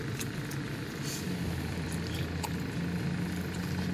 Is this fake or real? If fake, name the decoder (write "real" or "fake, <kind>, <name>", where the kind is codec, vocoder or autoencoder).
real